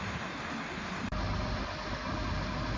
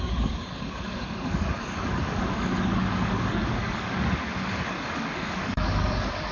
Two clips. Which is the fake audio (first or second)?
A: second